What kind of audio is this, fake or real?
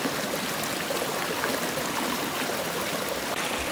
real